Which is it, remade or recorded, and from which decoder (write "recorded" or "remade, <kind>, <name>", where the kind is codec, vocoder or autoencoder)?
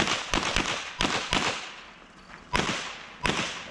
recorded